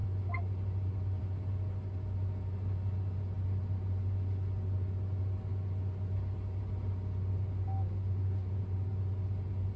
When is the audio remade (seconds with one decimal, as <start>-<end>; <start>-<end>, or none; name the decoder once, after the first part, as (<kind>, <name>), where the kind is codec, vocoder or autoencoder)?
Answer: none